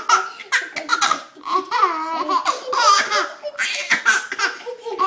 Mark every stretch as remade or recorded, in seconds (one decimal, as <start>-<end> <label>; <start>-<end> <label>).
0.0-5.1 recorded